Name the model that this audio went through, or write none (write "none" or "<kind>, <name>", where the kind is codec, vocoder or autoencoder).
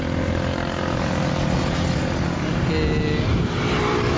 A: none